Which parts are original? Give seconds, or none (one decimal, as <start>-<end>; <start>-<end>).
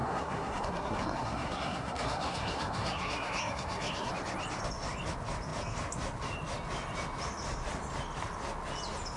4.1-9.2